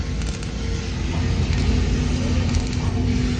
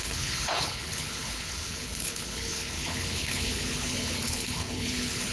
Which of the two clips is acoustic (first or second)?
first